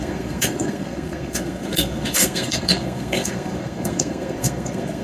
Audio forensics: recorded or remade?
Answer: remade